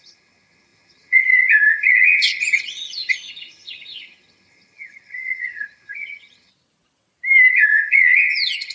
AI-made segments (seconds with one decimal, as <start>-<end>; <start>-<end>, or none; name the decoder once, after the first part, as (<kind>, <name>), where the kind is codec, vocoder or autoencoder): 0.0-6.5 (vocoder, HiFi-GAN); 7.5-8.7